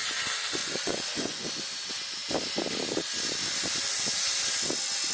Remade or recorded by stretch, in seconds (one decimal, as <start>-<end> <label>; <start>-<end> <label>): 0.0-0.6 recorded; 0.6-1.5 remade; 1.5-5.1 recorded